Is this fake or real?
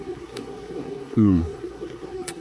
fake